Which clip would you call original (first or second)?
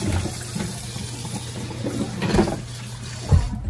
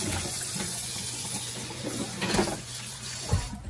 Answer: first